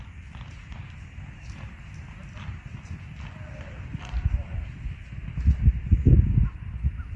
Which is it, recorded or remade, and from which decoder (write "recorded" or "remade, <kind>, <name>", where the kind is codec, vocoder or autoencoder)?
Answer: recorded